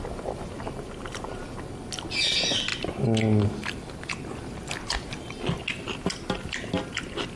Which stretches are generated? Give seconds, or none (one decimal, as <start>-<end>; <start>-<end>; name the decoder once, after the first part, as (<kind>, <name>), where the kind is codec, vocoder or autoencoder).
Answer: none